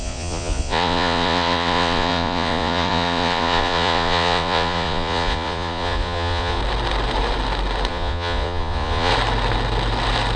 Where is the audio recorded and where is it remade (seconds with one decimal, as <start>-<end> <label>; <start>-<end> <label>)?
0.0-6.6 remade; 6.6-7.9 recorded; 7.9-9.1 remade; 9.1-10.4 recorded